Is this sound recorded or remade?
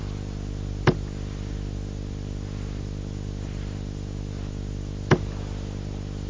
recorded